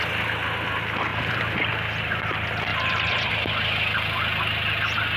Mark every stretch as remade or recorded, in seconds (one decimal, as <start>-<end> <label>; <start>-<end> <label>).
0.0-1.1 recorded; 1.1-1.7 remade; 1.7-2.7 recorded; 2.7-3.3 remade; 3.3-5.2 recorded